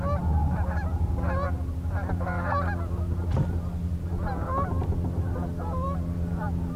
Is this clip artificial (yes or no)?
no